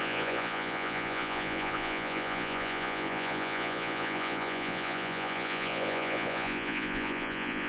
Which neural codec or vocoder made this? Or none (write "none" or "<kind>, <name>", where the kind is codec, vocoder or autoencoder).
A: vocoder, Vocos